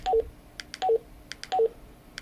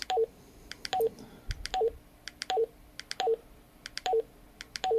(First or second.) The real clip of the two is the first